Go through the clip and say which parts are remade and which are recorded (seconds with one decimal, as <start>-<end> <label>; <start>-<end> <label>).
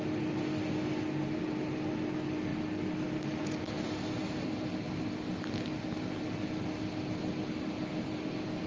0.0-8.7 recorded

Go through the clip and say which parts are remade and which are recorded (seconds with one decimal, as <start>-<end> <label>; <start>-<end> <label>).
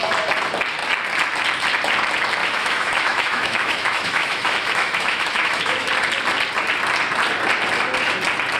0.0-2.4 recorded; 2.4-5.9 remade; 5.9-8.6 recorded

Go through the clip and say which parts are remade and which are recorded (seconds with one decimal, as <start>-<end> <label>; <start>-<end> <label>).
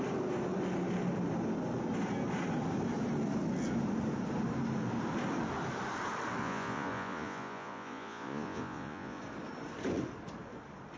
0.0-6.4 recorded; 6.4-9.2 remade; 9.2-11.0 recorded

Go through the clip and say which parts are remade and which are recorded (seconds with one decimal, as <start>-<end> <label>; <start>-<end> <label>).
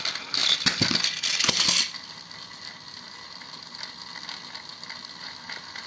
0.0-5.9 recorded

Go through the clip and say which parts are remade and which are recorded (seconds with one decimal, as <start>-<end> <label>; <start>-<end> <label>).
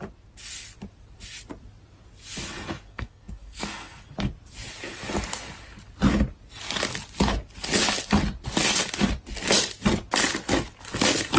0.0-2.9 recorded; 2.9-4.0 remade; 4.0-11.4 recorded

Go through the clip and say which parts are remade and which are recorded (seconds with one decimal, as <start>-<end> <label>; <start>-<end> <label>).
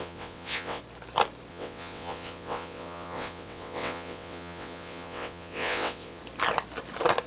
0.0-0.8 remade; 0.8-1.5 recorded; 1.5-6.2 remade; 6.2-7.3 recorded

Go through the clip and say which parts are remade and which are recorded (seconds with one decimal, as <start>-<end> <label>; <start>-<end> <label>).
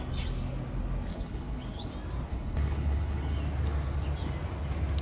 0.0-1.1 recorded; 1.1-1.9 remade; 1.9-2.3 recorded; 2.3-3.4 remade; 3.4-5.0 recorded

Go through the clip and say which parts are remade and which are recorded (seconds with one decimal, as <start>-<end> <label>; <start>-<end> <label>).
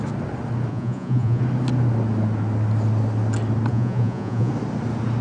0.0-0.7 recorded; 0.7-1.4 remade; 1.4-3.7 recorded; 3.7-4.5 remade; 4.5-5.2 recorded